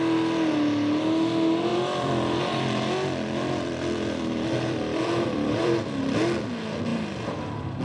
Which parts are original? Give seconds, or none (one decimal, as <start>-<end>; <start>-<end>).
0.0-1.7; 6.0-7.8